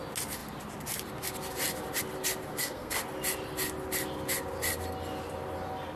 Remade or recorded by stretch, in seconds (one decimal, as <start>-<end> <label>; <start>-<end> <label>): 0.0-2.5 recorded; 2.5-3.0 remade; 3.0-6.0 recorded